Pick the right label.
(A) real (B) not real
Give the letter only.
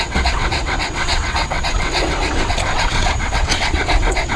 B